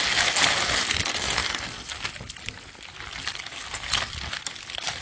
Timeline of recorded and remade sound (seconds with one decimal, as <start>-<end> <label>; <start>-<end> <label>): 0.0-5.0 recorded

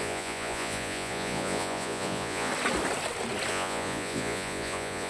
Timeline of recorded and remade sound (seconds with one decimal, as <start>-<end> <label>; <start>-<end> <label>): 0.0-2.5 remade; 2.5-3.5 recorded; 3.5-5.1 remade

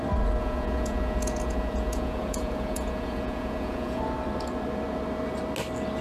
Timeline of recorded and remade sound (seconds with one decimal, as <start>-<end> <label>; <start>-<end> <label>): 0.0-0.4 recorded; 0.4-4.0 remade; 4.0-6.0 recorded

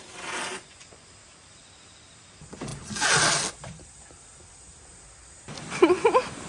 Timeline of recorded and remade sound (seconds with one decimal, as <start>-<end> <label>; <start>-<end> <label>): 0.0-0.5 recorded; 0.5-1.1 remade; 1.1-6.5 recorded